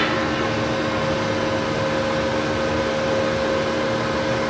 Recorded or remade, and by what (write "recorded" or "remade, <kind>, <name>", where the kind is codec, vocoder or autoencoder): recorded